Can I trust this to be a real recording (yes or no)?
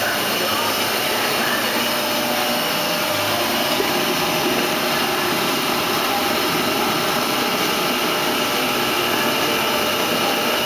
yes